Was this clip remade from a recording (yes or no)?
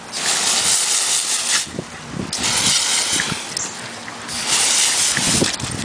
no